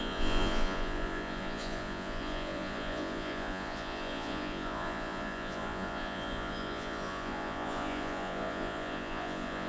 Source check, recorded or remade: remade